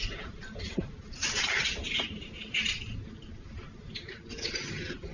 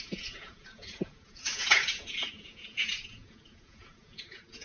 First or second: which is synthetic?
second